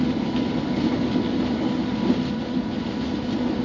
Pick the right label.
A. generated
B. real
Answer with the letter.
B